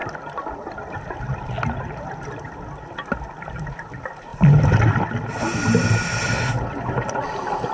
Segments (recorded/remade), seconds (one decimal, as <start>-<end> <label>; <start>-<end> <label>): 0.0-7.7 recorded